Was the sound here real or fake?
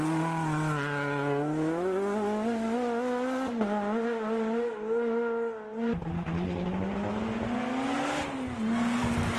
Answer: real